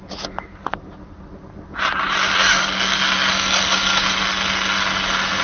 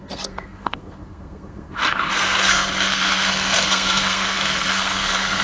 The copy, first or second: second